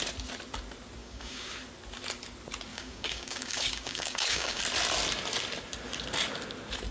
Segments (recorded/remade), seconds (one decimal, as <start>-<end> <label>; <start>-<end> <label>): 0.0-1.0 recorded; 1.0-1.5 remade; 1.5-2.7 recorded; 2.7-4.6 remade; 4.6-6.9 recorded